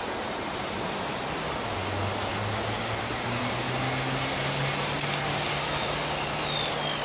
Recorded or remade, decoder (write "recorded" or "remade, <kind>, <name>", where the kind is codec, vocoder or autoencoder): recorded